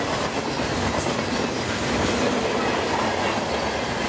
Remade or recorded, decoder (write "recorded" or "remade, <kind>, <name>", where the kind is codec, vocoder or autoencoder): recorded